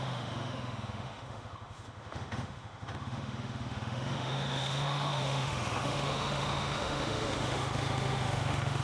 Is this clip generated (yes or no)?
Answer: yes